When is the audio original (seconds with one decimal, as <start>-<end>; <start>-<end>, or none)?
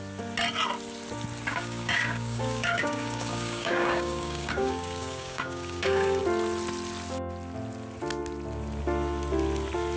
0.0-1.5; 6.2-10.0